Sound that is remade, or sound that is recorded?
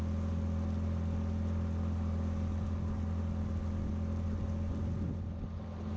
recorded